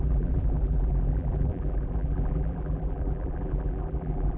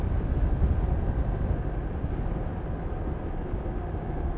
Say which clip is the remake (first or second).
first